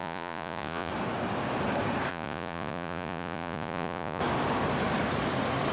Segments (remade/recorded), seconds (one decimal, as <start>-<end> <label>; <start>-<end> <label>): 0.0-0.9 remade; 0.9-2.1 recorded; 2.1-4.2 remade; 4.2-5.7 recorded